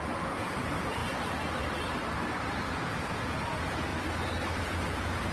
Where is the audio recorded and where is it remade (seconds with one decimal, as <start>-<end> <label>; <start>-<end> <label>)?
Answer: 0.0-1.0 remade; 1.0-2.7 recorded; 2.7-3.9 remade; 3.9-4.6 recorded; 4.6-5.3 remade